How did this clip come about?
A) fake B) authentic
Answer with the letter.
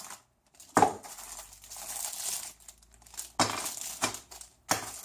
B